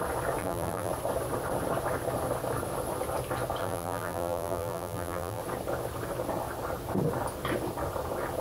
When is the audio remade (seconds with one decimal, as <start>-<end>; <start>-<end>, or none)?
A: 0.4-0.9; 3.6-5.4